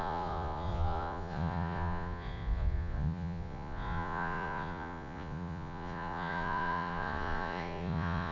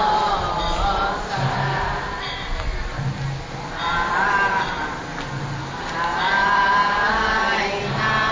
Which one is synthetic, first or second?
first